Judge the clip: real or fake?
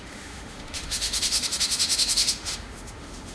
fake